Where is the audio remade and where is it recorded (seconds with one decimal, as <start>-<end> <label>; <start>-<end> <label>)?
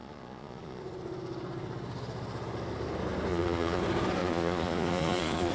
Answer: 0.0-0.8 remade; 0.8-3.3 recorded; 3.3-3.8 remade; 3.8-4.2 recorded; 4.2-5.5 remade